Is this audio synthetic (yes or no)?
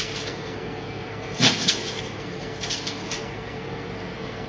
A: yes